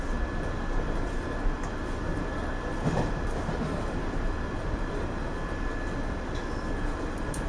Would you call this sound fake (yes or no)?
no